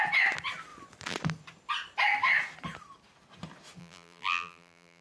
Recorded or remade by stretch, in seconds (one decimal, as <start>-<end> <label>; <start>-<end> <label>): 0.0-3.8 recorded; 3.8-5.0 remade